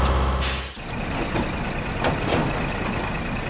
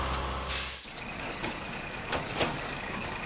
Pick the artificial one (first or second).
second